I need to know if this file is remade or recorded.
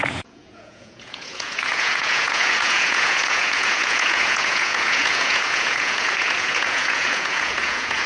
remade